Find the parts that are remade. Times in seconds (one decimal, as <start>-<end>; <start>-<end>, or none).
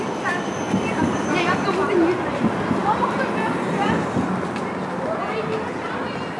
none